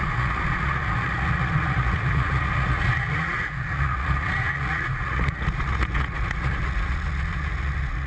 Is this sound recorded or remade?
remade